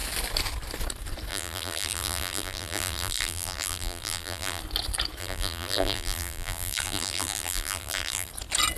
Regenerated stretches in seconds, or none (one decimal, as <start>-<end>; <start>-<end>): 1.3-4.6; 5.2-8.3